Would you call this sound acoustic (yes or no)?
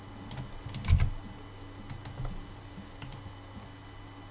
yes